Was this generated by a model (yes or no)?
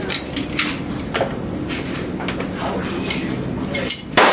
no